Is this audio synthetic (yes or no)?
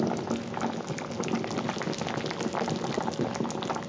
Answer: no